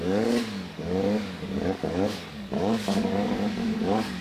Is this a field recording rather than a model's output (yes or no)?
no